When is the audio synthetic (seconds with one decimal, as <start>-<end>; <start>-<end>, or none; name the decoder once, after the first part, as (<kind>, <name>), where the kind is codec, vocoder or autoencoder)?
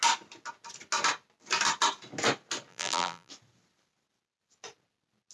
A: 2.7-3.3 (vocoder, BigVGAN v2)